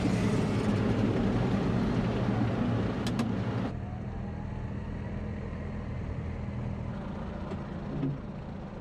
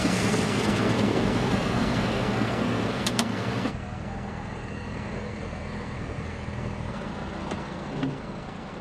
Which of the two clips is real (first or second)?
first